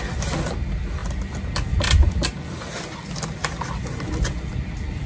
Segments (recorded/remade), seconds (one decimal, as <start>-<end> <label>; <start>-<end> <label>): 0.0-5.1 recorded